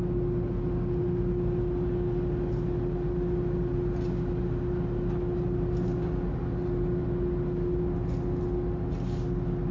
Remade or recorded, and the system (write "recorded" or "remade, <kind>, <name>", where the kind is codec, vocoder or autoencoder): recorded